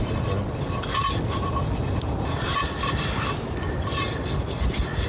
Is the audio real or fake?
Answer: real